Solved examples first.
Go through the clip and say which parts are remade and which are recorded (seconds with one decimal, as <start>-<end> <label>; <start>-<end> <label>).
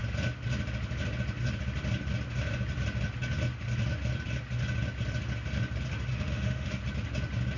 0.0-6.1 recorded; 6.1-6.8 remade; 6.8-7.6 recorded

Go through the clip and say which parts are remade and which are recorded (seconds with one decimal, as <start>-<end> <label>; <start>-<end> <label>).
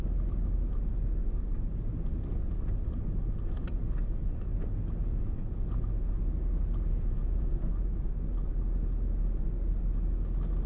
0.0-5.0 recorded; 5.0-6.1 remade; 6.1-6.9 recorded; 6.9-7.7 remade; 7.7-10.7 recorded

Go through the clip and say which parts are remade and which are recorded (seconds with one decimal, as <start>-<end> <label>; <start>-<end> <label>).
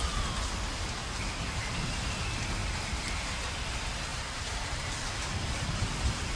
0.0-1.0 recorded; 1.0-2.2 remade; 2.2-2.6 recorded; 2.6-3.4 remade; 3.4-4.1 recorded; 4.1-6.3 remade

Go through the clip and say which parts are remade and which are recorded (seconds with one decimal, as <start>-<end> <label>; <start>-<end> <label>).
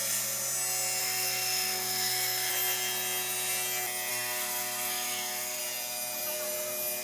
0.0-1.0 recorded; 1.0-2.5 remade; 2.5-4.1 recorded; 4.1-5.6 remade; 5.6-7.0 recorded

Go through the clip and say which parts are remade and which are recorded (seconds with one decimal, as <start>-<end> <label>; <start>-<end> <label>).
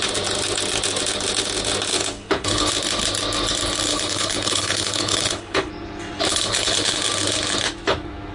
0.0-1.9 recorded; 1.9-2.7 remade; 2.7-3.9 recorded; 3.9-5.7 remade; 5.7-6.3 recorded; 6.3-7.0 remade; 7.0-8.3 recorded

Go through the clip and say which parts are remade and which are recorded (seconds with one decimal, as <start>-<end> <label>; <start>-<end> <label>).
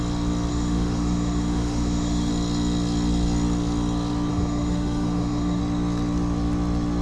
0.0-0.5 recorded; 0.5-2.3 remade; 2.3-4.3 recorded; 4.3-5.6 remade; 5.6-7.0 recorded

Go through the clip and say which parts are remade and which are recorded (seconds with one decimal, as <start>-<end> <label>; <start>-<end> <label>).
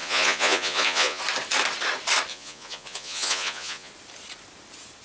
0.0-1.2 remade; 1.2-2.3 recorded; 2.3-3.9 remade; 3.9-5.0 recorded